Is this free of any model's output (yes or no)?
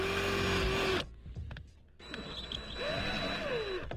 yes